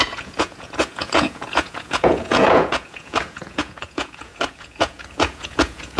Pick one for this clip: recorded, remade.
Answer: remade